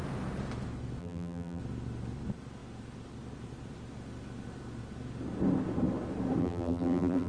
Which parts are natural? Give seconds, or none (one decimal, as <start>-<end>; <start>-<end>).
0.0-1.0; 1.6-6.4